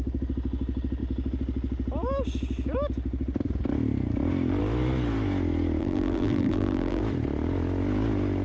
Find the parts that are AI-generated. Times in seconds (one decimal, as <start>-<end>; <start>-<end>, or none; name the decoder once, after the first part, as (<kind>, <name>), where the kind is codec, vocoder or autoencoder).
5.8-7.0 (vocoder, BigVGAN v2)

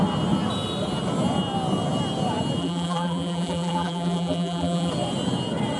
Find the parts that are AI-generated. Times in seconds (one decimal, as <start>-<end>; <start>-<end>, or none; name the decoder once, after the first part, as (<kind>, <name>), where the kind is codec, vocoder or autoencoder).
2.6-4.9 (vocoder, BigVGAN v2)

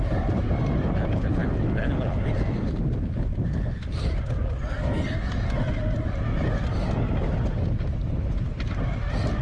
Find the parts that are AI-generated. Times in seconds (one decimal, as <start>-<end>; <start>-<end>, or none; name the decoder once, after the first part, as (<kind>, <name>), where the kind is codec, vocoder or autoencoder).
1.4-1.9 (vocoder, BigVGAN v2); 3.3-4.6

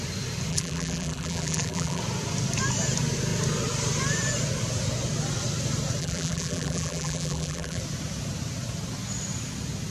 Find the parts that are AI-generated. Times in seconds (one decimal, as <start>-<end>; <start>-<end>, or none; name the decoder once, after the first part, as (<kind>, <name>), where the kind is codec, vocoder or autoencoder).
0.5-2.0 (vocoder, BigVGAN v2); 6.0-7.8

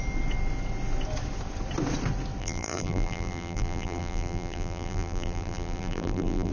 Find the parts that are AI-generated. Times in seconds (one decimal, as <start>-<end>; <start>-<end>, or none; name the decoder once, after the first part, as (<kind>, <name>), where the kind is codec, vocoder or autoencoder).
2.4-6.5 (vocoder, BigVGAN v2)

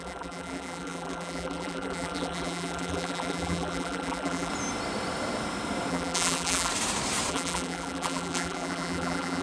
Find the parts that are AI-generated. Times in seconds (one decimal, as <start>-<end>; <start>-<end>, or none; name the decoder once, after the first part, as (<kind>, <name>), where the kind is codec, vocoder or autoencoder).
0.0-4.5 (vocoder, BigVGAN v2); 5.9-6.7; 7.3-9.4